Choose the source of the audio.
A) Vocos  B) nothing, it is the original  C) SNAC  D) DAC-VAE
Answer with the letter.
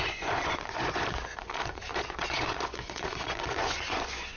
A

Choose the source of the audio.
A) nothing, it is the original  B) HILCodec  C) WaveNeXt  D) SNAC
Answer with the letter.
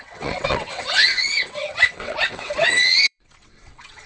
C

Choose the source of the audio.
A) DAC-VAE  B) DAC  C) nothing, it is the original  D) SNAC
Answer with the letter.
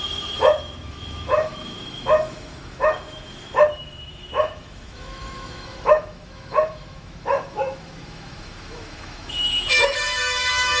A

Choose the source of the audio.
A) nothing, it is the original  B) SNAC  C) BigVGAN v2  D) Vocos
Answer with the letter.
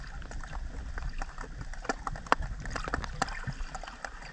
A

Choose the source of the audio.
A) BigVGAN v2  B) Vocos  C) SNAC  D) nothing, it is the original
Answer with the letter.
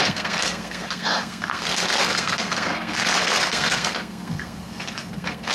C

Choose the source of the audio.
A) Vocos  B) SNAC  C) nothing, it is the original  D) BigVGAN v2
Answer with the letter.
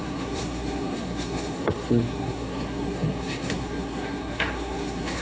B